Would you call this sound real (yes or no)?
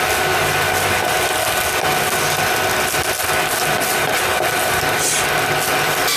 yes